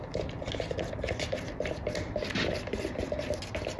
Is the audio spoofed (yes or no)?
no